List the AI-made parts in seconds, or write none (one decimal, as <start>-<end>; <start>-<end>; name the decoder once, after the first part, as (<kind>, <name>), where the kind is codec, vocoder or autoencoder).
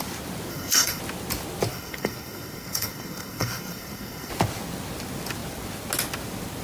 0.5-1.0 (codec, SNAC); 1.7-4.3